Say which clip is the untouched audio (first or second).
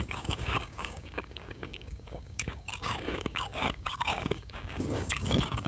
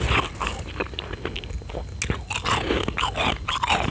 second